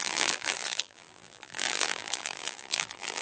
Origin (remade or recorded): remade